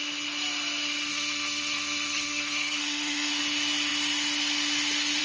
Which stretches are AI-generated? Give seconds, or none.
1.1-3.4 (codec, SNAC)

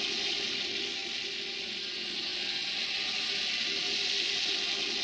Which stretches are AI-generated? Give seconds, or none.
none

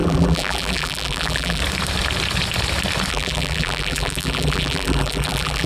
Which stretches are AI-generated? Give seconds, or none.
0.0-1.6 (vocoder, BigVGAN v2); 3.1-5.7

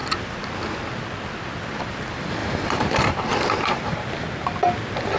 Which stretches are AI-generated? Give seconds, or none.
2.4-4.3 (vocoder, BigVGAN v2)

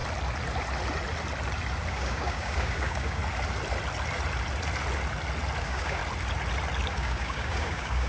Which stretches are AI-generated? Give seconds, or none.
1.9-3.2 (codec, DAC); 5.6-6.0; 6.9-8.1

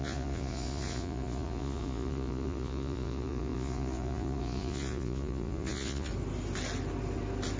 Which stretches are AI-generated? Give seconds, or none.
0.0-6.1 (vocoder, Vocos)

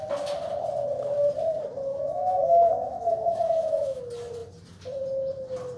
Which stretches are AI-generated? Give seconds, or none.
1.9-4.0 (autoencoder, DAC-VAE)